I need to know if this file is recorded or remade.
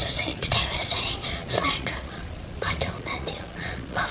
remade